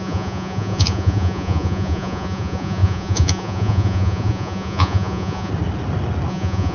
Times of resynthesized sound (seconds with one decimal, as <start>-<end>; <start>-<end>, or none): 0.0-5.5; 6.3-6.7